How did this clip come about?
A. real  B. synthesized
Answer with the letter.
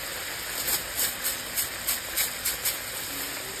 A